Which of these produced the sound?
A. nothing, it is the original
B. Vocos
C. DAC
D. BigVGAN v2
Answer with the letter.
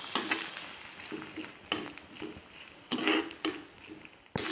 A